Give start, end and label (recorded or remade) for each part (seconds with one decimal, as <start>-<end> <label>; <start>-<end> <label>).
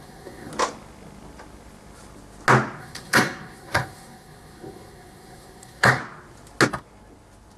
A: 0.0-0.5 remade; 0.5-2.8 recorded; 2.8-6.0 remade; 6.0-7.6 recorded